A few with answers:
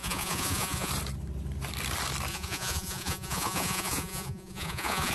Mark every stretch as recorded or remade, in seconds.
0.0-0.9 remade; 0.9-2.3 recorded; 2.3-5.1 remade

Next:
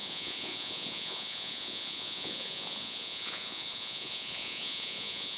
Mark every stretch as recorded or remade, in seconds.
0.0-5.4 remade

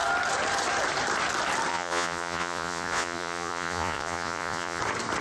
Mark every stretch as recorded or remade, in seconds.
0.0-1.7 recorded; 1.7-4.8 remade; 4.8-5.2 recorded

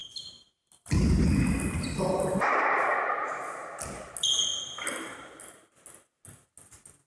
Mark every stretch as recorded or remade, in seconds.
0.0-7.1 recorded